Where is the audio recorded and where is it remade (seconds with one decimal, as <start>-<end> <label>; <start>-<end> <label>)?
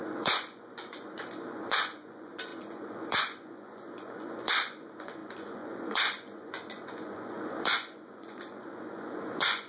0.0-9.7 remade